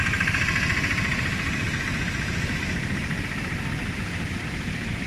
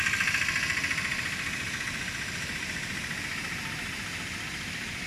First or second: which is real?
second